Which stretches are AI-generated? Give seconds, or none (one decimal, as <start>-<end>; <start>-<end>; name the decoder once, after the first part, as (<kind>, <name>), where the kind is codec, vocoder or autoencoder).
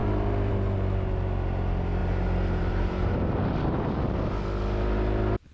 2.0-3.2 (vocoder, BigVGAN v2)